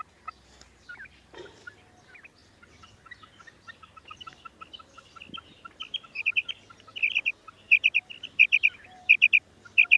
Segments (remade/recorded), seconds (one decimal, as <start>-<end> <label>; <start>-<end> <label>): 0.0-10.0 recorded